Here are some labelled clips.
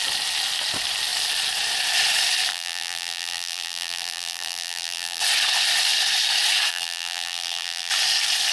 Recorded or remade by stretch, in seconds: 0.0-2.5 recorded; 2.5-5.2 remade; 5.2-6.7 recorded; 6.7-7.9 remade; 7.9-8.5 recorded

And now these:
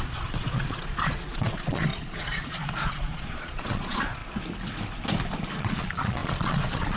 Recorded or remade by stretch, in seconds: 0.0-4.2 remade; 4.2-5.6 recorded; 5.6-7.0 remade